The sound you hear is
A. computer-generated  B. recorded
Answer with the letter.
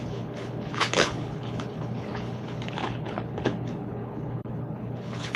A